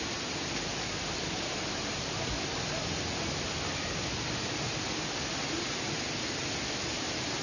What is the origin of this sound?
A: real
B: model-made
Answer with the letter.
A